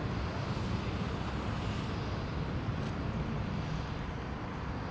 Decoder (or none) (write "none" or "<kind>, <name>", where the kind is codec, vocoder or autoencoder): none